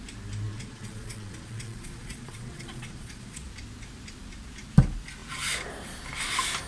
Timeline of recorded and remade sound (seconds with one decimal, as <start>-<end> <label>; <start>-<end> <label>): 0.0-0.5 recorded; 0.5-3.5 remade; 3.5-6.7 recorded